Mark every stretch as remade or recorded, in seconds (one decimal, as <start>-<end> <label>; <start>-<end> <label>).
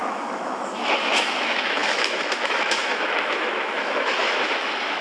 0.0-5.0 remade